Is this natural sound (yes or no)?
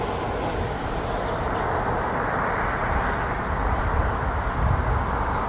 yes